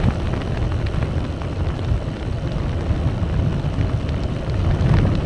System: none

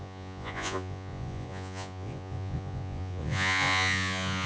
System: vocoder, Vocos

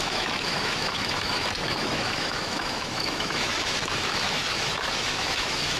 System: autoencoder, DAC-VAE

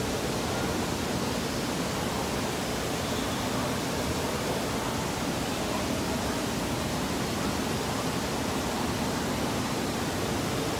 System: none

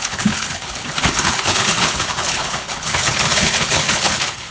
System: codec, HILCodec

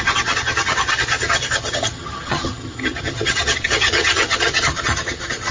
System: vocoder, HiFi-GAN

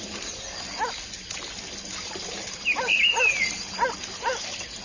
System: none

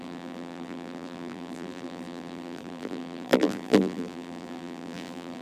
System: vocoder, BigVGAN v2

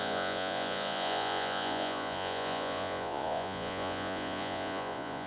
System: vocoder, Vocos